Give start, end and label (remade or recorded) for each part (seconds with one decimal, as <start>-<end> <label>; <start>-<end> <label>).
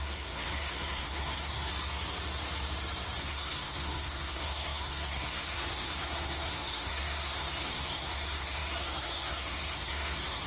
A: 0.0-1.7 remade; 1.7-3.2 recorded; 3.2-10.5 remade